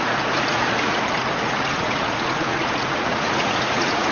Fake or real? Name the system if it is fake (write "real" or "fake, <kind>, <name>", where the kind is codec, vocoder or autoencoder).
fake, vocoder, Vocos